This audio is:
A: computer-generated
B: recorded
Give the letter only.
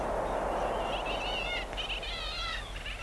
B